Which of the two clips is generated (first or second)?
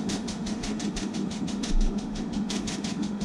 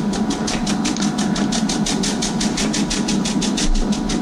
first